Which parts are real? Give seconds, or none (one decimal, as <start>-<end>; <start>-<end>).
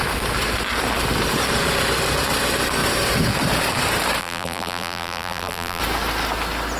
0.0-4.2; 5.8-6.8